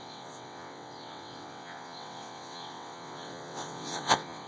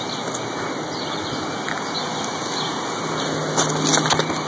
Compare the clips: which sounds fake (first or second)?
first